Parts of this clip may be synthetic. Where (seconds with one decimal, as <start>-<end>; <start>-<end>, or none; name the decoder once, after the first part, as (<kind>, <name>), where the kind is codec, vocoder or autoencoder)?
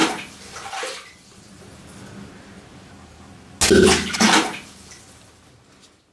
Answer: none